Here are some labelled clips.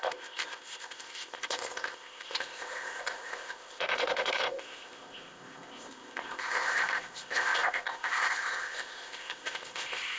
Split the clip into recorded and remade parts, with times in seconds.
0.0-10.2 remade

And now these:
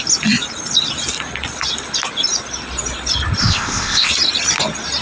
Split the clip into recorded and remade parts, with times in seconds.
0.0-3.4 recorded; 3.4-4.1 remade; 4.1-5.0 recorded

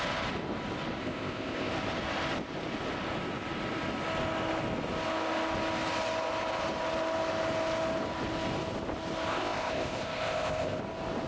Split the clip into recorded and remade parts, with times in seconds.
0.0-1.0 recorded; 1.0-1.7 remade; 1.7-9.3 recorded; 9.3-10.8 remade; 10.8-11.3 recorded

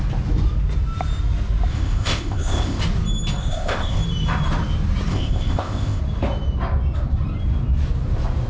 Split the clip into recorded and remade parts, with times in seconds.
0.0-1.7 recorded; 1.7-2.8 remade; 2.8-3.4 recorded; 3.4-4.0 remade; 4.0-5.1 recorded; 5.1-6.0 remade; 6.0-8.5 recorded